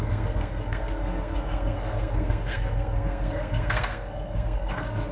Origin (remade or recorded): remade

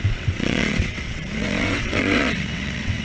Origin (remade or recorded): remade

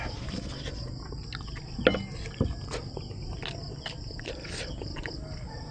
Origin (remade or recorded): recorded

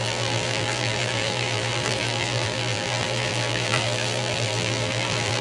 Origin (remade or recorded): remade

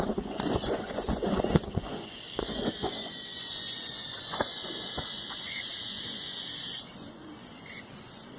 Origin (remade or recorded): remade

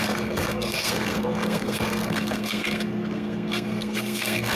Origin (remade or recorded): remade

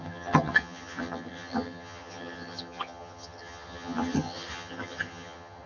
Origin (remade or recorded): remade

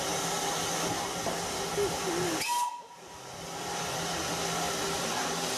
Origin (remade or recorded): recorded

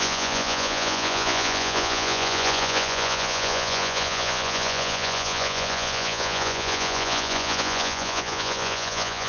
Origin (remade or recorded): remade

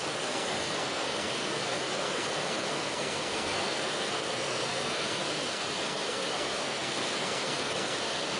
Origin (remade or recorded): remade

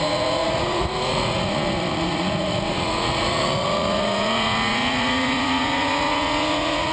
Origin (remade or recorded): remade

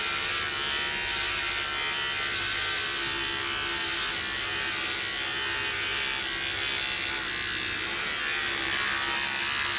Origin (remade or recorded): recorded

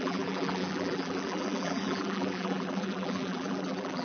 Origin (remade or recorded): remade